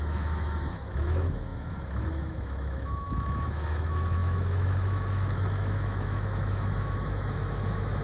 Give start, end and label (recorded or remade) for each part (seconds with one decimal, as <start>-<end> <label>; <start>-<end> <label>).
0.0-8.0 remade